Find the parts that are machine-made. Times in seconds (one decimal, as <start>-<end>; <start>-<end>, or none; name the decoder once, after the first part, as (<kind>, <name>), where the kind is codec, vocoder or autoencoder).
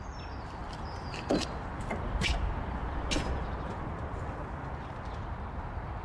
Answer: none